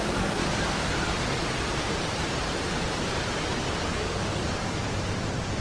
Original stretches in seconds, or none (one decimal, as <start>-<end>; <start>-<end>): 0.4-3.8; 4.8-5.6